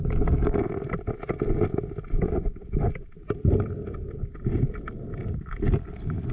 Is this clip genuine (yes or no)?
yes